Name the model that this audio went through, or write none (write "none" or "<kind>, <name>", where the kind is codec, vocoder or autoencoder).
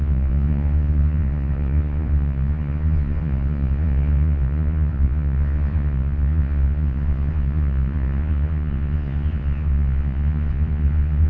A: vocoder, Vocos